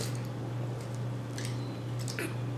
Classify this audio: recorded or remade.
recorded